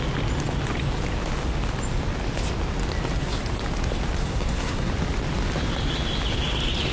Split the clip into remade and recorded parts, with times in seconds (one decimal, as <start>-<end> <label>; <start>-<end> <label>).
0.0-4.2 recorded; 4.2-4.9 remade; 4.9-6.9 recorded